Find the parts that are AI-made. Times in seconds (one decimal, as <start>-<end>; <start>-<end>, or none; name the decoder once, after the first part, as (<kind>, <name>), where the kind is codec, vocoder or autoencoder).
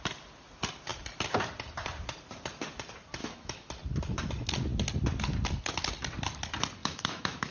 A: 3.2-3.7 (autoencoder, DAC-VAE); 6.8-7.5